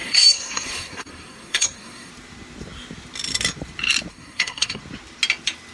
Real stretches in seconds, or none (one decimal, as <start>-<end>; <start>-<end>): 2.1-4.1; 4.8-5.7